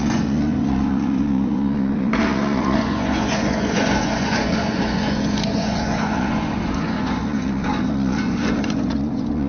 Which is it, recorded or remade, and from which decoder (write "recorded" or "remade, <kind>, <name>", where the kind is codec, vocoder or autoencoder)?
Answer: remade, vocoder, Vocos